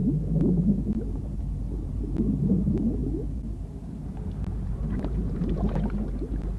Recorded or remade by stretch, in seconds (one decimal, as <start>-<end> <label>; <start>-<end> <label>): 0.0-1.1 recorded; 1.1-6.6 remade